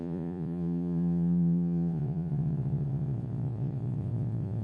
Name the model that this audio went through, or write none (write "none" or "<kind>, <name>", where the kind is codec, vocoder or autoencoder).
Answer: vocoder, Vocos